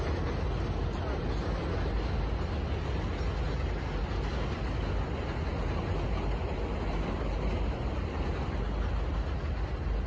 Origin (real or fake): real